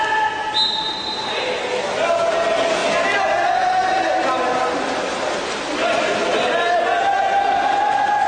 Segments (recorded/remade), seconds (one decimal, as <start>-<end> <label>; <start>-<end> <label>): 0.0-8.3 recorded